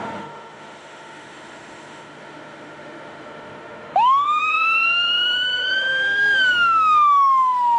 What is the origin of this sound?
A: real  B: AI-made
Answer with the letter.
B